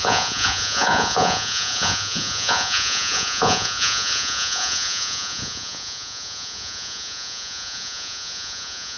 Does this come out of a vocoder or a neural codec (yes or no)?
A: yes